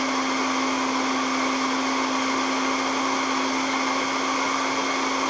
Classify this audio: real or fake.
real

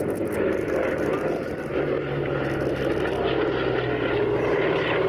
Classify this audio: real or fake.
real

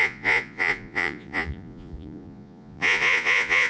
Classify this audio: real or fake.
fake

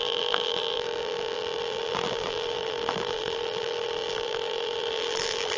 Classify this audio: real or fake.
fake